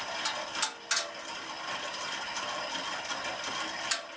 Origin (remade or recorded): recorded